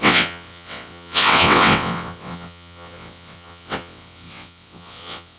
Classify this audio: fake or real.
fake